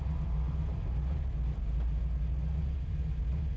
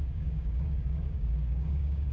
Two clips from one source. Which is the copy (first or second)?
second